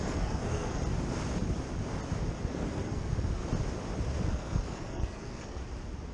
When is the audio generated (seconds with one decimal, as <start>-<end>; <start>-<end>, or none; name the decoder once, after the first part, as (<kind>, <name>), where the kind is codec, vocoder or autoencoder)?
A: 0.0-0.8 (codec, SNAC); 2.5-3.4; 4.2-5.6